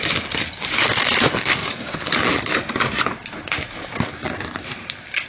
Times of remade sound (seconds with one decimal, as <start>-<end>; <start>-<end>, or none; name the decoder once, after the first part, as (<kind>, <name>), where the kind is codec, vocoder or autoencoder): none